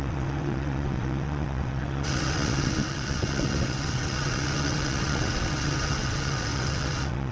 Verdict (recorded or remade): remade